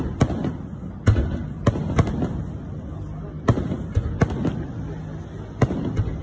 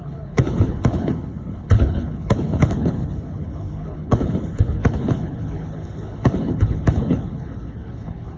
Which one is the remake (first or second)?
second